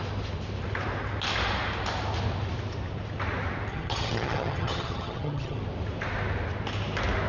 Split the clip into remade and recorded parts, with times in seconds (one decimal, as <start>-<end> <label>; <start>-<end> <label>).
0.0-3.7 recorded; 3.7-5.6 remade; 5.6-7.3 recorded